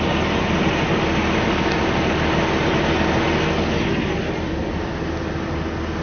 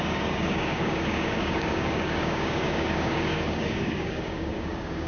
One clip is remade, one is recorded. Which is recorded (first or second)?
first